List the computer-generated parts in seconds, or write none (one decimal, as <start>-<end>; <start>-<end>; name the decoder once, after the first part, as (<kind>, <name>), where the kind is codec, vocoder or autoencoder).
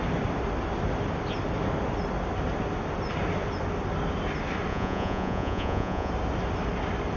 4.7-6.1 (vocoder, Vocos)